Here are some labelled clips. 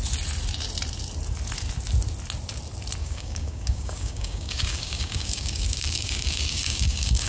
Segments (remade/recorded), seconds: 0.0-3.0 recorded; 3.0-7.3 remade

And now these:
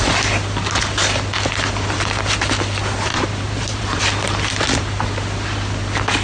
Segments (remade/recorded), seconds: 0.0-3.1 recorded; 3.1-4.0 remade; 4.0-6.2 recorded

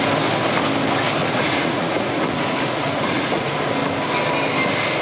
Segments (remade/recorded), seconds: 0.0-1.2 recorded; 1.2-3.6 remade; 3.6-5.0 recorded

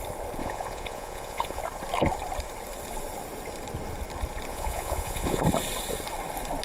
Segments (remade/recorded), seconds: 0.0-0.4 recorded; 0.4-1.6 remade; 1.6-4.5 recorded; 4.5-5.4 remade; 5.4-6.6 recorded

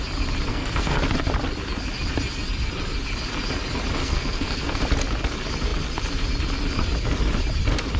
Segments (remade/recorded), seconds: 0.0-0.5 recorded; 0.5-1.0 remade; 1.0-4.0 recorded; 4.0-4.8 remade; 4.8-8.0 recorded